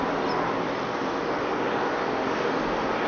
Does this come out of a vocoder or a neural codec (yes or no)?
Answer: no